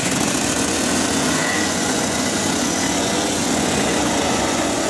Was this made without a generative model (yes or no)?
no